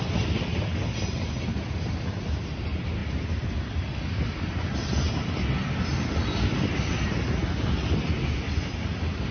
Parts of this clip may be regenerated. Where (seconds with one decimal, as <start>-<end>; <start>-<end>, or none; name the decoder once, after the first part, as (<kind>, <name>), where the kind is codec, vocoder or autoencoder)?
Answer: 3.0-4.0 (vocoder, BigVGAN v2); 5.9-6.9